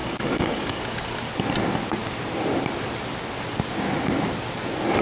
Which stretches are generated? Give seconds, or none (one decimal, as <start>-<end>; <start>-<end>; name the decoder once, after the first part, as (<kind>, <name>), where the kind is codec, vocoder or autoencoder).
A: 0.0-0.8 (codec, DAC)